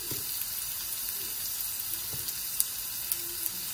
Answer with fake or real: real